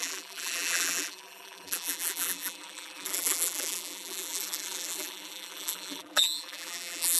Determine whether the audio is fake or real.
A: fake